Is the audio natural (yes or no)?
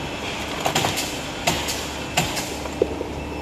yes